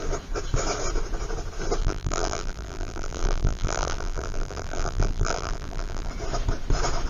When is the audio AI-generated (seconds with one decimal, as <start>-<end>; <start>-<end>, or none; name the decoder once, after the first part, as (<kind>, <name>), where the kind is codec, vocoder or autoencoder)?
1.8-6.1 (vocoder, BigVGAN v2)

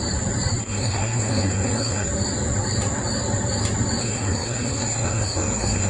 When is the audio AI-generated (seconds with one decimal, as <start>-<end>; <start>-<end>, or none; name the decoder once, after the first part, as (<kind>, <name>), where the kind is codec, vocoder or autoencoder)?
0.6-2.1 (codec, SNAC); 4.0-5.9

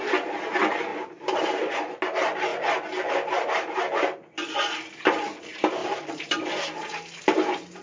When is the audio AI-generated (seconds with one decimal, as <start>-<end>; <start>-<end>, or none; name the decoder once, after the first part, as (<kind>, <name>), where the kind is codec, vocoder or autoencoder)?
0.9-1.6 (vocoder, BigVGAN v2); 5.8-6.5

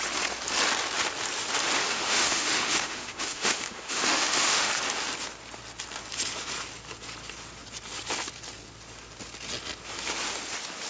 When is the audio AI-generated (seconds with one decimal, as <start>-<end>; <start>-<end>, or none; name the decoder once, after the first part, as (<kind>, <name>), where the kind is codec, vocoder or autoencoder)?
1.8-4.7 (autoencoder, DAC-VAE)

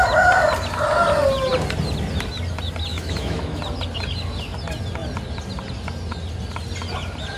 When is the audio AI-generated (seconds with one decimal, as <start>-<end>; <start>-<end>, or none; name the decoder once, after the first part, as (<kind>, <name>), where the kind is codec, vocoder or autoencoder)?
2.9-3.6 (autoencoder, DAC-VAE)

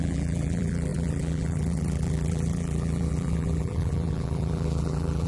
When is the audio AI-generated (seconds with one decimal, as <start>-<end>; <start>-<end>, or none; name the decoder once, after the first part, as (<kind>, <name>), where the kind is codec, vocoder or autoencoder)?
0.0-5.3 (vocoder, BigVGAN v2)

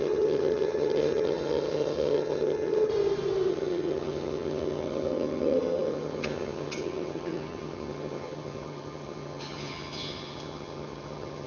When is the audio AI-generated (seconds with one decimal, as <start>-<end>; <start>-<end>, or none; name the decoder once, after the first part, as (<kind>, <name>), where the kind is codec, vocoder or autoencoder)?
0.0-2.9 (vocoder, HiFi-GAN); 3.5-11.5